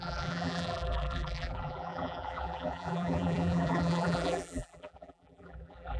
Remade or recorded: remade